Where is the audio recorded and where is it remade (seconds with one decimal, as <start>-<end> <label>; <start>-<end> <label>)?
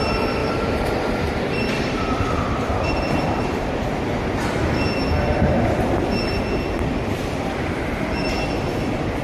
0.0-0.4 recorded; 0.4-4.0 remade; 4.0-9.2 recorded